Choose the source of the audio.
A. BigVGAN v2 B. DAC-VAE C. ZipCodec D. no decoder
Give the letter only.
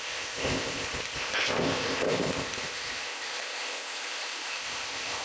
C